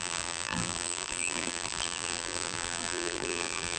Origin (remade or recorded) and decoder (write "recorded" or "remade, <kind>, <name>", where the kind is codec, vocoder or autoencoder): remade, vocoder, BigVGAN v2